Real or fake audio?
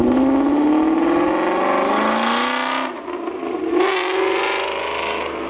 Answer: real